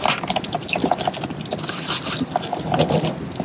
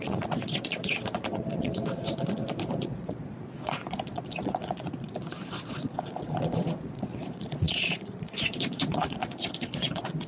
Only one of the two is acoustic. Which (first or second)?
first